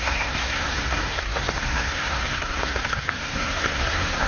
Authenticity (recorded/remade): remade